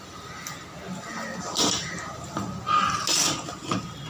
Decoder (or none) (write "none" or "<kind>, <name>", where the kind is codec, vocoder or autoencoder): none